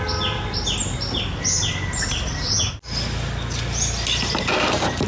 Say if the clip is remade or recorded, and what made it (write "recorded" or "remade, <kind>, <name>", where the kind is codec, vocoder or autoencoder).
recorded